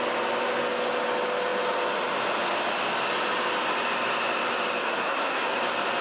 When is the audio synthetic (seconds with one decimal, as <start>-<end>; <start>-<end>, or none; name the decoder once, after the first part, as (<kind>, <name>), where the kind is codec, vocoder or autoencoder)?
4.8-5.6 (codec, SNAC)

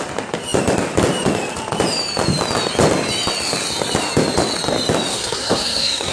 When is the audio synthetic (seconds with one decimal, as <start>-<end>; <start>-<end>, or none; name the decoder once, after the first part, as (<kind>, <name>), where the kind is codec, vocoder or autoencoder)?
5.1-6.1 (codec, SNAC)

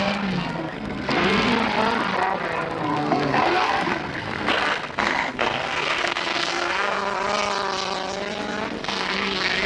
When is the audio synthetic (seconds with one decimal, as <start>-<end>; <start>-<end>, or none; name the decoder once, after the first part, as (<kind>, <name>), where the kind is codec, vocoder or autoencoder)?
0.0-1.5 (codec, SNAC); 2.8-7.0; 8.8-9.7

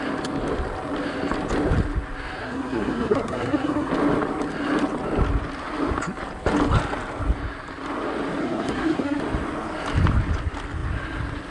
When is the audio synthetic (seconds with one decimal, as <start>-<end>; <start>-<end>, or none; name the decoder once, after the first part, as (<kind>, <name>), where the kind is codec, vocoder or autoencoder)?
2.4-3.9 (codec, SNAC); 8.4-9.2